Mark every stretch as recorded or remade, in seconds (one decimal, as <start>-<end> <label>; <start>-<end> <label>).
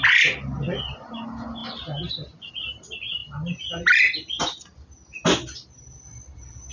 0.0-6.7 recorded